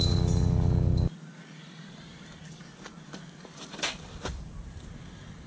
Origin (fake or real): real